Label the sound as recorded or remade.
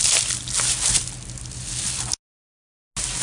recorded